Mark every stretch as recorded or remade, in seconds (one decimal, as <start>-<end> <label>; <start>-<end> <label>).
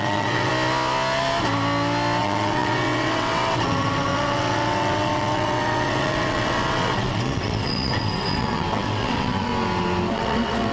0.0-0.5 remade; 0.5-2.2 recorded; 2.2-9.5 remade; 9.5-10.1 recorded; 10.1-10.7 remade